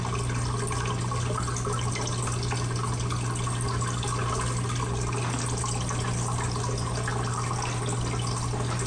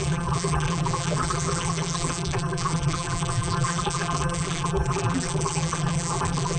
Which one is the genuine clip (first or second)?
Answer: first